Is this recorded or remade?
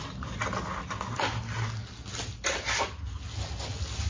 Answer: recorded